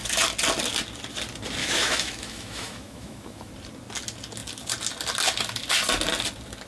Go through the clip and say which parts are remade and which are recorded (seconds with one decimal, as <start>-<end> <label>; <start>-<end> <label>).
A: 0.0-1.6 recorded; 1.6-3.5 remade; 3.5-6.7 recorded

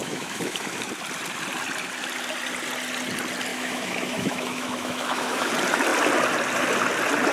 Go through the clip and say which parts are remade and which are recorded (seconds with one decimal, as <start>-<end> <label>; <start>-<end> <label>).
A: 0.0-0.9 remade; 0.9-3.5 recorded; 3.5-5.5 remade; 5.5-7.3 recorded

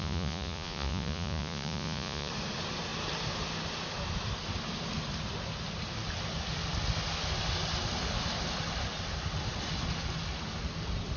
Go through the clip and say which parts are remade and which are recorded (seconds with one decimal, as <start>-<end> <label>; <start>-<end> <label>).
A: 0.0-2.3 remade; 2.3-11.2 recorded

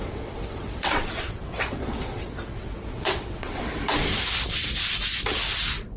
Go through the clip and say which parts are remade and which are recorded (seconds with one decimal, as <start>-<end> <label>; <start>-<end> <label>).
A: 0.0-3.6 remade; 3.6-6.0 recorded